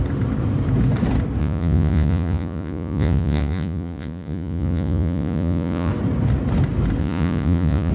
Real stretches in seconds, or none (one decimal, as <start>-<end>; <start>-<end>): 0.0-1.4; 5.9-7.0